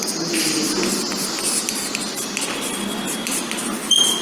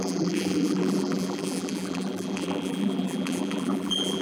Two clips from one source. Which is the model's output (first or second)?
second